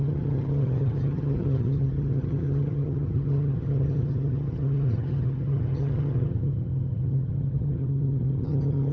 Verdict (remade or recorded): remade